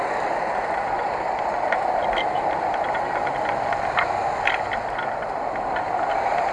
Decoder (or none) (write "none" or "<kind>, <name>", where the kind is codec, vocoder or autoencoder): none